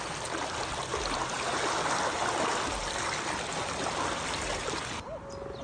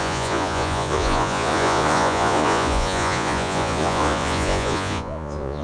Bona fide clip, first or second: first